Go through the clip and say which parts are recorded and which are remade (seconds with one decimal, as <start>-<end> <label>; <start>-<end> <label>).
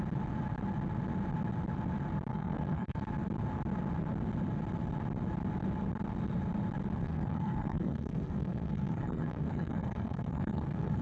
0.0-2.3 recorded; 2.3-3.0 remade; 3.0-7.0 recorded; 7.0-11.0 remade